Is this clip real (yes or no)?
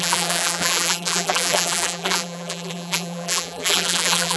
no